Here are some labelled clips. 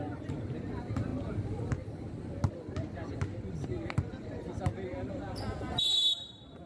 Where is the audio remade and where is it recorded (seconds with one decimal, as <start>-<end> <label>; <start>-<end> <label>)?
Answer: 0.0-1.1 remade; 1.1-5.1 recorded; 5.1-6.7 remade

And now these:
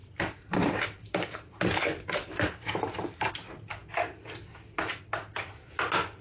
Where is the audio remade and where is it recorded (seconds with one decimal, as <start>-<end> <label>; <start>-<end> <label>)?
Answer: 0.0-3.3 remade; 3.3-6.2 recorded

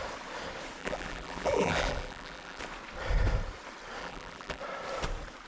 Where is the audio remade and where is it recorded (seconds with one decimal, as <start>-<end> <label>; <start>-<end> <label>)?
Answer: 0.0-0.8 recorded; 0.8-2.6 remade; 2.6-4.0 recorded; 4.0-4.6 remade; 4.6-5.5 recorded